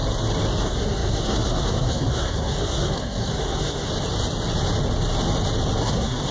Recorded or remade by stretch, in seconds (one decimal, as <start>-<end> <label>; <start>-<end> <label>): 0.0-0.6 recorded; 0.6-3.9 remade; 3.9-5.8 recorded; 5.8-6.3 remade